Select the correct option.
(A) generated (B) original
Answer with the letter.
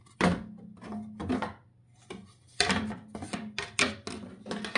B